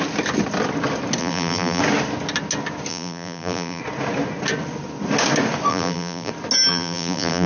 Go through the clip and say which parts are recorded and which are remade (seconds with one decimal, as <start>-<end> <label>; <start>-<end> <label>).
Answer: 0.0-1.2 recorded; 1.2-1.8 remade; 1.8-2.9 recorded; 2.9-3.8 remade; 3.8-5.7 recorded; 5.7-6.3 remade; 6.3-6.7 recorded; 6.7-7.5 remade